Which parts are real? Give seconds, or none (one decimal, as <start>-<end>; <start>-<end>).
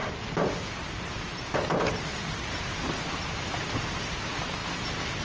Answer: 2.7-5.2